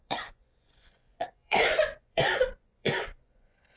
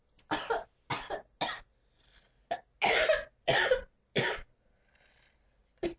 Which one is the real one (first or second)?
second